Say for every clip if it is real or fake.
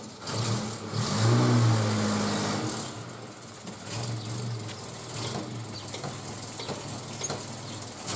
real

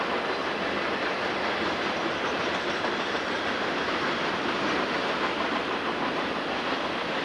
real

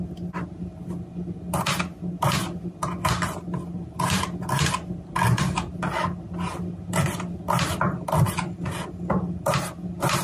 real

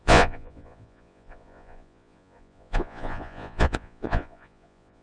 fake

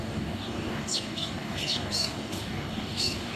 fake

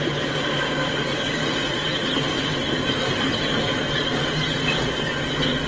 real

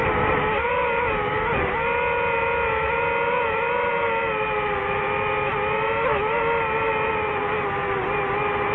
real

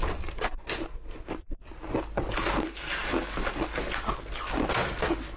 real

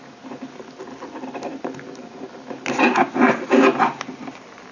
real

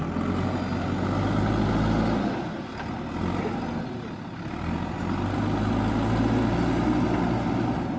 real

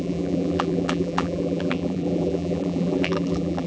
fake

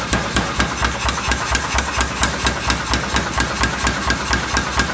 real